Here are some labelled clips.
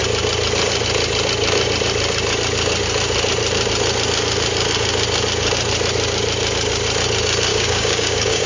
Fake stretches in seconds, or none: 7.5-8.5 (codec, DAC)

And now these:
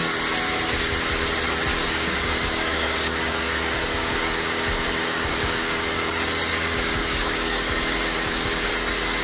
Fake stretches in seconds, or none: 1.7-6.1 (codec, DAC); 6.5-8.7

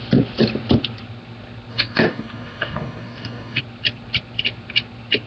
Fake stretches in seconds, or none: 1.7-3.6 (codec, DAC)

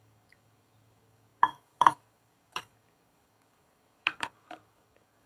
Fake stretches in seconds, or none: 0.0-5.3 (codec, DAC)

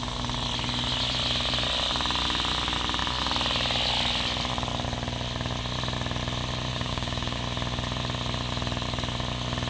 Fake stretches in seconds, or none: 6.7-7.4 (codec, DAC)

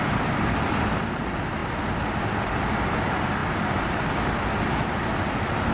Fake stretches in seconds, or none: none

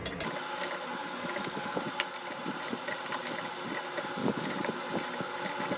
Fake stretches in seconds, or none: 1.0-1.8 (codec, DAC); 4.2-4.7

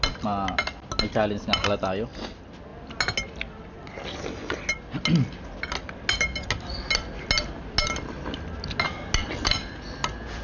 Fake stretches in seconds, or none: none